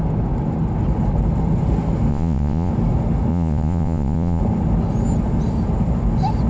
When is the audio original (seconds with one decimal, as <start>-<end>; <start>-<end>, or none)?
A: 0.0-2.1; 2.7-3.3; 4.4-6.5